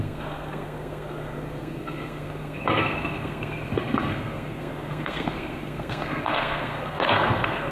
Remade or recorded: remade